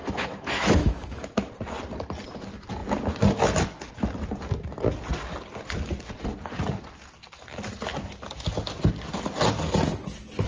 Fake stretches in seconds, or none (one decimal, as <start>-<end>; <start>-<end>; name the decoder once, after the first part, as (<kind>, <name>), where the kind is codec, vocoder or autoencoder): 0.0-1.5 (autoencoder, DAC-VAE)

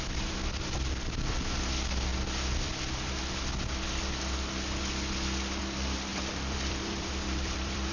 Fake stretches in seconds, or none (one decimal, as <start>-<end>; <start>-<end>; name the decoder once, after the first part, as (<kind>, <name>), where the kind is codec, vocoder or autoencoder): 6.1-7.9 (vocoder, BigVGAN v2)

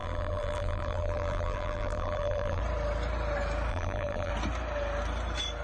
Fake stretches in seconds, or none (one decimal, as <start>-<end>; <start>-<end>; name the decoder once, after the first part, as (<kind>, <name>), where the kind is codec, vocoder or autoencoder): 0.0-2.6 (vocoder, BigVGAN v2); 3.7-4.3

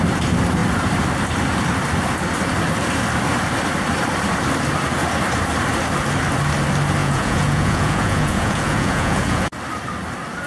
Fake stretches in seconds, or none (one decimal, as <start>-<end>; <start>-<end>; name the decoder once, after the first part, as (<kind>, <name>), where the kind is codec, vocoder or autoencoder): 7.0-9.5 (vocoder, Vocos)